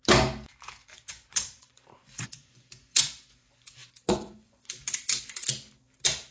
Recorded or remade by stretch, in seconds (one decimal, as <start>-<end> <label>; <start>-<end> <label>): 0.0-0.9 recorded; 0.9-4.7 remade; 4.7-6.3 recorded